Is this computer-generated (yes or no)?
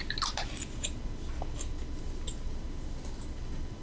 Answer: no